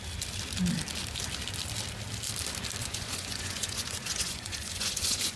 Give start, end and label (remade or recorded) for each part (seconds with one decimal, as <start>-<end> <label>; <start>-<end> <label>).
0.0-2.8 recorded; 2.8-5.4 remade